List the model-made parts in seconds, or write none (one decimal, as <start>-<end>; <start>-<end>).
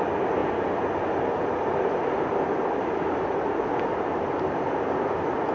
2.3-3.3